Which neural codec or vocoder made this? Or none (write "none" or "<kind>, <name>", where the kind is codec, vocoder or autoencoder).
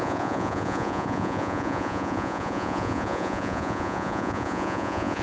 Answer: vocoder, Vocos